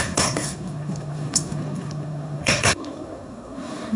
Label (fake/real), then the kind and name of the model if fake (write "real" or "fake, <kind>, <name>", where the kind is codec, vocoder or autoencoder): fake, codec, SNAC